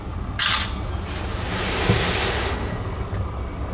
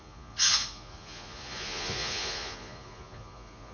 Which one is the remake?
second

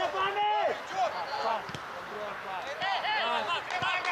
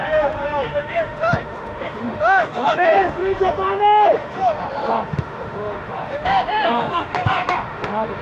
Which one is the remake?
second